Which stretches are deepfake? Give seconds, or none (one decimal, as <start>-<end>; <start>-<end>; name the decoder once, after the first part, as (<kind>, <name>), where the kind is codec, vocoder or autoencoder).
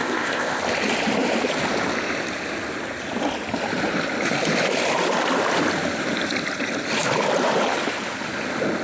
0.0-0.6 (codec, ZipCodec)